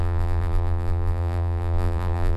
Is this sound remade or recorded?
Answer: remade